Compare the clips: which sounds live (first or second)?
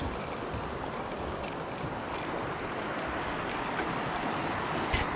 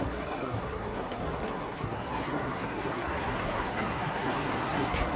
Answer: first